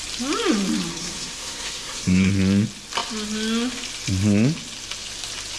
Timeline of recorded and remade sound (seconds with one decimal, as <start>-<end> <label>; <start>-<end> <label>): 0.0-0.9 recorded; 0.9-2.3 remade; 2.3-5.6 recorded